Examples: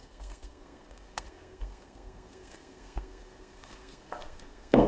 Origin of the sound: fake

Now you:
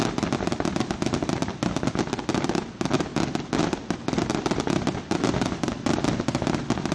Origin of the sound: real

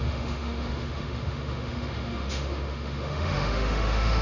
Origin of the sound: fake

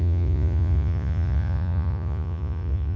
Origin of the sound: fake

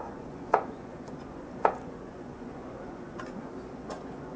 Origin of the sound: fake